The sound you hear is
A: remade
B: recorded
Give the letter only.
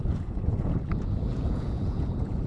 A